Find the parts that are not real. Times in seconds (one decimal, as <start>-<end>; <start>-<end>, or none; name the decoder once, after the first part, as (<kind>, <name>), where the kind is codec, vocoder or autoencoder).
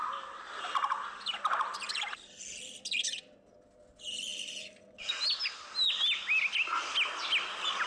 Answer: 4.3-5.1 (vocoder, BigVGAN v2)